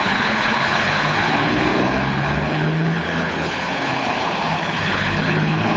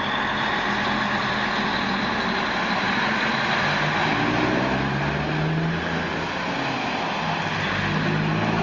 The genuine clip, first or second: second